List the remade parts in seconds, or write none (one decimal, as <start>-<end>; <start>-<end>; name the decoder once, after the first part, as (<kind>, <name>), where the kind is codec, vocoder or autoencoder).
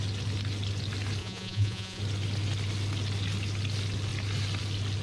1.2-2.0 (vocoder, Vocos)